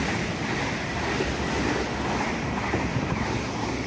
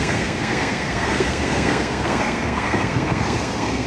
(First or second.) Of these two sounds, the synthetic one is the second